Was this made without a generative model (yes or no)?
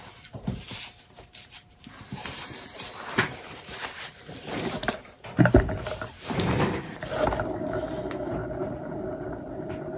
no